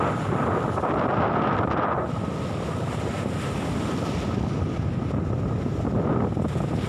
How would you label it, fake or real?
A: real